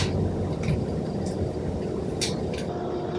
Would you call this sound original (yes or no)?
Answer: yes